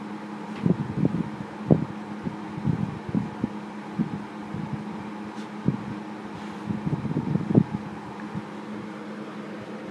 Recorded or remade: recorded